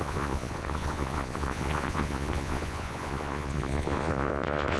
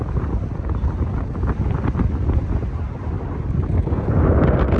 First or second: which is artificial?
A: first